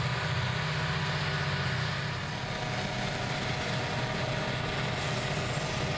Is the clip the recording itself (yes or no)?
yes